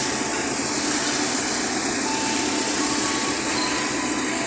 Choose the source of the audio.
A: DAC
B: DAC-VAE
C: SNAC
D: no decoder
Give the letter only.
D